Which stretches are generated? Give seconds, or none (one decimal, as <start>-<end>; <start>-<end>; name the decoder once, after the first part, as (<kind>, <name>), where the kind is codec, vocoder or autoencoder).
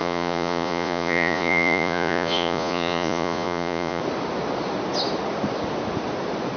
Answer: 0.0-4.0 (vocoder, Vocos)